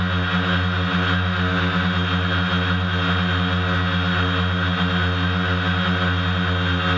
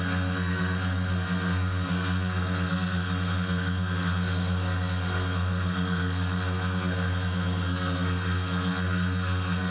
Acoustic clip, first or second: first